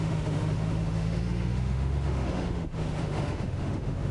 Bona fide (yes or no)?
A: no